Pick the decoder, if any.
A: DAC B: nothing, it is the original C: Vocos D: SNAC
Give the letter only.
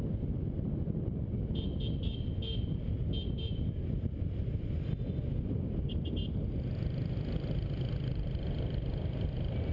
B